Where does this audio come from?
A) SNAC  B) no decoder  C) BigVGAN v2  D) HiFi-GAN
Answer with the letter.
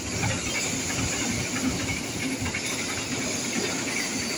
B